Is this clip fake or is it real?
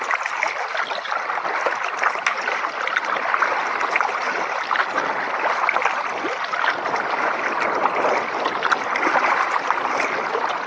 real